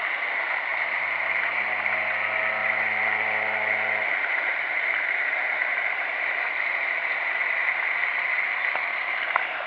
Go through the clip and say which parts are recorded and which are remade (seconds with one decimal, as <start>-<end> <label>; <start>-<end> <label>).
0.0-0.7 recorded; 0.7-2.1 remade; 2.1-2.6 recorded; 2.6-6.9 remade; 6.9-9.7 recorded